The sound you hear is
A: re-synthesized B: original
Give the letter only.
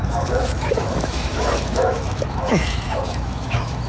A